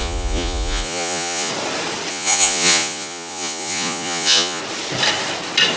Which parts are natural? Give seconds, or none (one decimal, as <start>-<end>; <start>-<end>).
1.5-2.1; 4.6-5.8